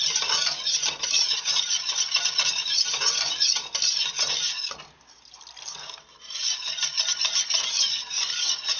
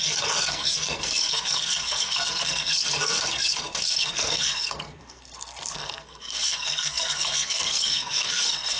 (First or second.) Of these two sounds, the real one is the first